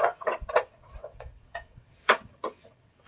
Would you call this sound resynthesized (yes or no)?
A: yes